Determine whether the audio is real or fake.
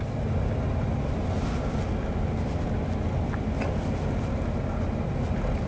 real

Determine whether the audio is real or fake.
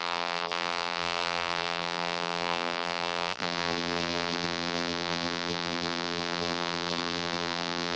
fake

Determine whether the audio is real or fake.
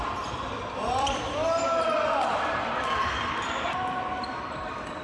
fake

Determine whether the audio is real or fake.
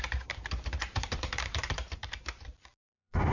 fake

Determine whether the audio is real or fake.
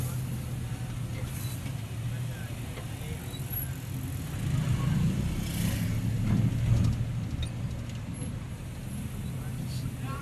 real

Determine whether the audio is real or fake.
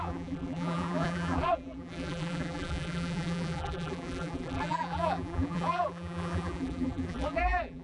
fake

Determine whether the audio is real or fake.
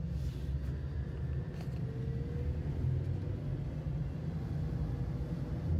real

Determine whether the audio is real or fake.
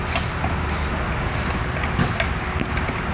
real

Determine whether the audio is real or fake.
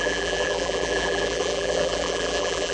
fake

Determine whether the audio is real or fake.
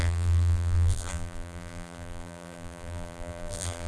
fake